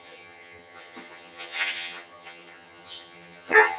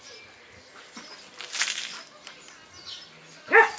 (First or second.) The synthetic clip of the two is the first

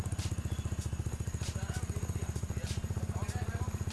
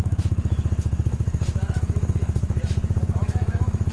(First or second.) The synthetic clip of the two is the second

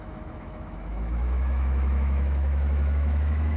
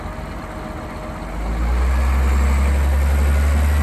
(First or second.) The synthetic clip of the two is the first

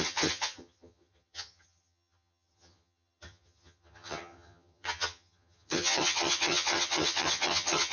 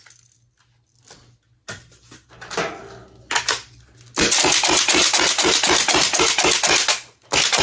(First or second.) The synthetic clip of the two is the first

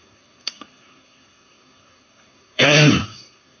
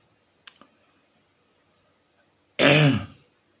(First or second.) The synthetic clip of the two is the first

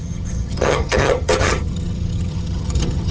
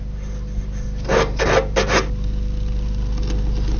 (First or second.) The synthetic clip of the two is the first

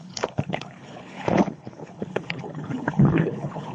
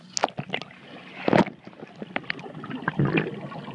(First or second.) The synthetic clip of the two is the first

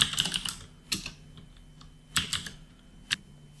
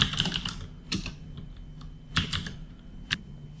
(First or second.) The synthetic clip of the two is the second